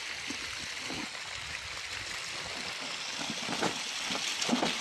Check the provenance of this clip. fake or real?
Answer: real